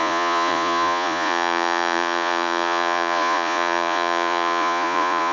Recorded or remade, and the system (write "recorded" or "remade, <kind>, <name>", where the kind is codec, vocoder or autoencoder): remade, vocoder, Vocos